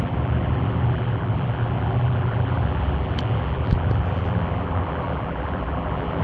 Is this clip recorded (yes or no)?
no